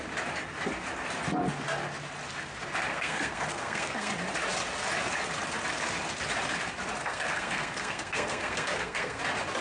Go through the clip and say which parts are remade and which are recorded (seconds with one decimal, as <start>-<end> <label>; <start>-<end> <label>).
0.0-2.9 recorded; 2.9-4.1 remade; 4.1-7.0 recorded; 7.0-9.2 remade; 9.2-9.6 recorded